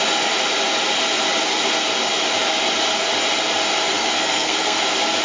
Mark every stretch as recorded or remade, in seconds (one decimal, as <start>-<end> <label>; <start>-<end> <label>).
0.0-4.0 recorded; 4.0-4.8 remade; 4.8-5.2 recorded